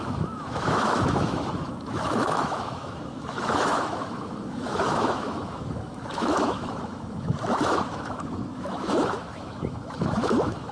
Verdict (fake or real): fake